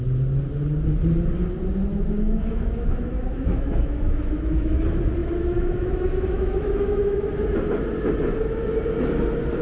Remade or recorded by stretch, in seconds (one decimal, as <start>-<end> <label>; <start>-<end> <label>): 0.0-1.9 recorded; 1.9-4.8 remade; 4.8-5.2 recorded; 5.2-7.3 remade; 7.3-9.6 recorded